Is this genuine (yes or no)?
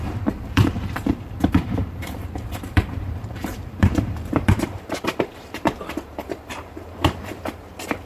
no